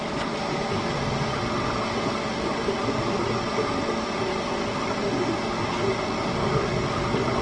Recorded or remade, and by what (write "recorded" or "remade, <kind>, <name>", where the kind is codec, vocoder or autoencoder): recorded